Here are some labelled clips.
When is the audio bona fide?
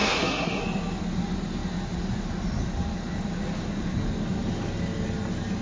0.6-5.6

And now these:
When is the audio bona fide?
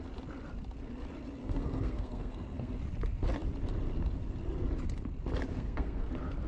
0.0-1.4; 2.7-5.5; 6.1-6.5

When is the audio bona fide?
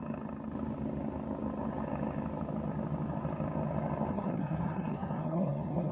0.0-4.1